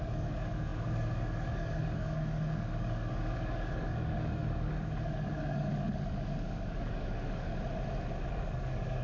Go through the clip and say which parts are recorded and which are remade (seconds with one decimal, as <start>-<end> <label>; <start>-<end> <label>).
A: 0.0-7.5 remade; 7.5-8.3 recorded; 8.3-9.0 remade